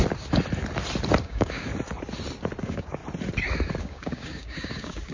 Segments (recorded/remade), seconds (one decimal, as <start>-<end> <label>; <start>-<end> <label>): 0.0-1.2 recorded; 1.2-1.7 remade; 1.7-2.6 recorded; 2.6-3.0 remade; 3.0-3.8 recorded; 3.8-5.1 remade

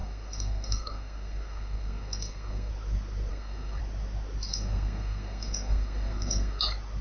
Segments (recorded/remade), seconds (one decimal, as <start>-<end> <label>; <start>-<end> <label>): 0.0-2.7 remade; 2.7-3.3 recorded; 3.3-3.8 remade; 3.8-4.5 recorded; 4.5-6.6 remade; 6.6-7.0 recorded

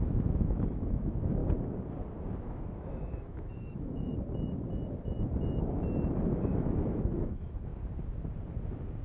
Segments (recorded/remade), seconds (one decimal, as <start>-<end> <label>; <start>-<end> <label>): 0.0-1.4 remade; 1.4-2.4 recorded; 2.4-4.1 remade; 4.1-6.2 recorded; 6.2-7.7 remade; 7.7-9.0 recorded

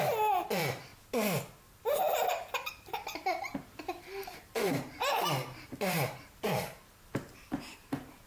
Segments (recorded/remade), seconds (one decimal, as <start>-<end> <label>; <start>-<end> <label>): 0.0-0.9 remade; 0.9-1.8 recorded; 1.8-8.3 remade

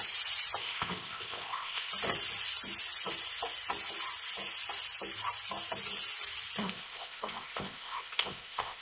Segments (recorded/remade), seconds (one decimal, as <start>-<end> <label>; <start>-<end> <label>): 0.0-0.6 recorded; 0.6-1.9 remade; 1.9-6.6 recorded; 6.6-8.8 remade

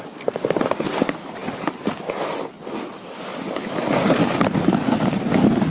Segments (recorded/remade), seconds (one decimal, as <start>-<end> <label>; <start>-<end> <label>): 0.0-5.7 recorded

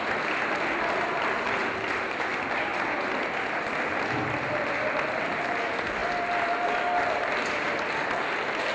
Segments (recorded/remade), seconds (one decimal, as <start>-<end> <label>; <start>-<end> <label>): 0.0-8.7 recorded